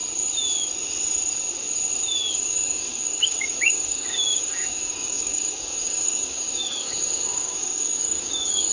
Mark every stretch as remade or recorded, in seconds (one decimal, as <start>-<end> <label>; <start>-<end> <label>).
0.0-2.3 recorded; 2.3-8.7 remade